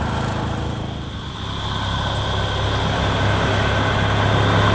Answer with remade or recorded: recorded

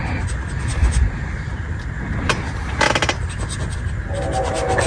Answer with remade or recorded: recorded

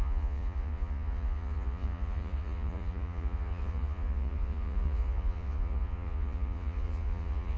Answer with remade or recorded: remade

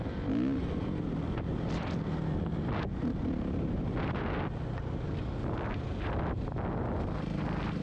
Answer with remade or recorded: recorded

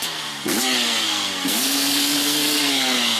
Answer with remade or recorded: remade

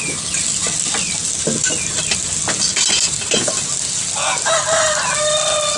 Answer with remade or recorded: recorded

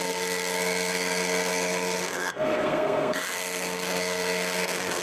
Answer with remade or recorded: remade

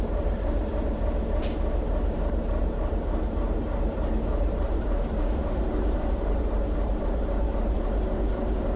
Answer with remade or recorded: remade